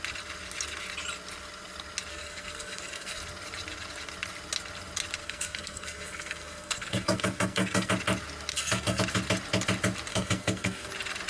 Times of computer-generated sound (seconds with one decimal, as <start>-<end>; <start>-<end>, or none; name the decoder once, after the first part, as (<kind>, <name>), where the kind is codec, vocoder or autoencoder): 2.1-3.2 (codec, SNAC); 5.2-7.9; 8.5-9.0; 10.1-10.9